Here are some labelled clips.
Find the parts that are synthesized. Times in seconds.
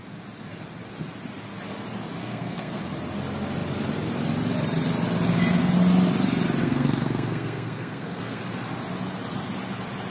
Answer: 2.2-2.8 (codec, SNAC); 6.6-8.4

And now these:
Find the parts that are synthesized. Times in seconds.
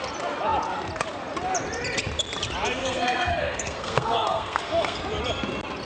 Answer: 2.8-5.0 (codec, SNAC)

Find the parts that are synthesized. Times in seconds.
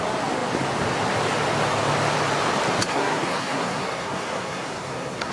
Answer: 2.9-5.3 (codec, SNAC)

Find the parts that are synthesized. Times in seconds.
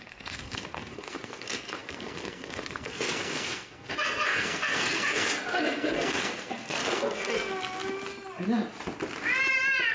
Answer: 0.0-7.5 (codec, SNAC)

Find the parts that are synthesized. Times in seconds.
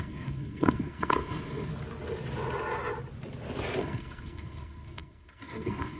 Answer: 0.0-1.7 (codec, SNAC); 3.8-6.0